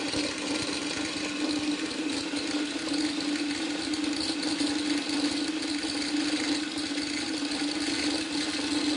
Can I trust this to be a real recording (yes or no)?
yes